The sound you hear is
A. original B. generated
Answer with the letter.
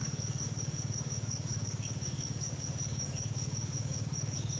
B